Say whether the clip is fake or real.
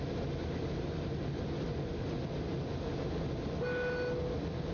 real